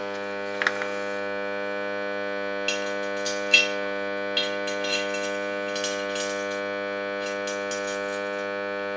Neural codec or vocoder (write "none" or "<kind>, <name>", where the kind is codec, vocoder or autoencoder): none